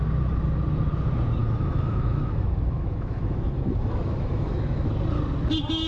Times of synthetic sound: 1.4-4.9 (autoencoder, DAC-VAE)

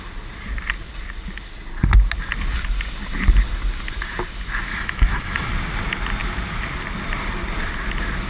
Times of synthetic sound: 4.7-5.5 (autoencoder, DAC-VAE)

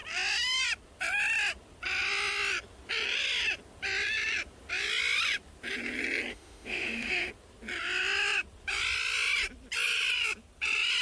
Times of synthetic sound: 6.3-7.3 (autoencoder, DAC-VAE)

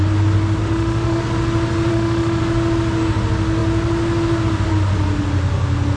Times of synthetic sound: 0.6-1.2 (autoencoder, DAC-VAE); 1.9-2.4

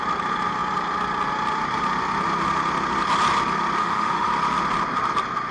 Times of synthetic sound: 3.8-4.3 (autoencoder, DAC-VAE)